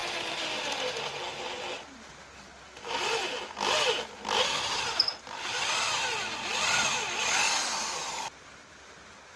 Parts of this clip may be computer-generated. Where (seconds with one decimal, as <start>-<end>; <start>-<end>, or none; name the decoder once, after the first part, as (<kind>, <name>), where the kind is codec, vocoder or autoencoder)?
none